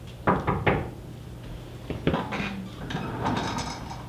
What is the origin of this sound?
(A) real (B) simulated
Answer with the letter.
A